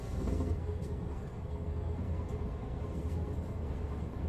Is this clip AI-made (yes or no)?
yes